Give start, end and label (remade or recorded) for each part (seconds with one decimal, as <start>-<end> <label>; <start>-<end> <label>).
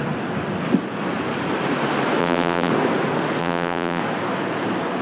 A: 0.0-2.2 recorded; 2.2-2.7 remade; 2.7-3.4 recorded; 3.4-4.0 remade; 4.0-5.0 recorded